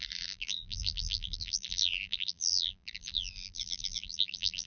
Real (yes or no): no